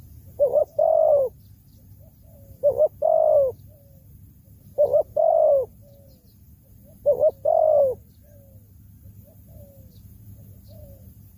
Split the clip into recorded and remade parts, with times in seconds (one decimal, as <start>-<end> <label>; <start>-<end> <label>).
0.0-0.9 remade; 0.9-4.6 recorded; 4.6-6.8 remade; 6.8-10.0 recorded; 10.0-11.4 remade